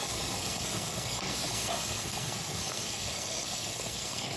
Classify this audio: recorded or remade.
remade